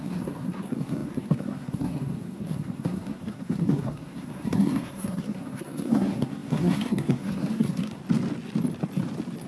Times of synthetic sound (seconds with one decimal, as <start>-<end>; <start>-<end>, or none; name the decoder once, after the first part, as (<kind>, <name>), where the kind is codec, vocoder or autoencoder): 0.0-8.0 (codec, SNAC)